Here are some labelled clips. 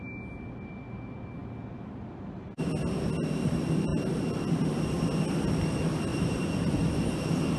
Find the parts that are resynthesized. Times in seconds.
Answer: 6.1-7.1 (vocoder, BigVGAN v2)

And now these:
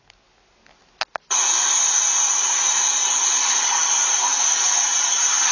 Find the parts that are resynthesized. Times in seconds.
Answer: none

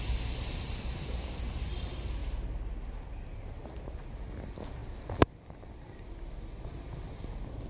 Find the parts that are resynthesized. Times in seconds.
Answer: 2.2-3.2 (vocoder, BigVGAN v2); 4.8-6.1

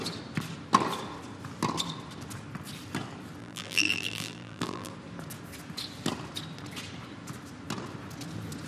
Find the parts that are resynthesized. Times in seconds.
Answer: 3.4-4.9 (vocoder, BigVGAN v2)

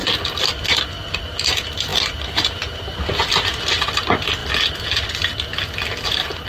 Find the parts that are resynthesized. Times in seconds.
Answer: none